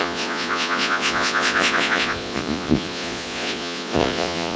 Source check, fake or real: fake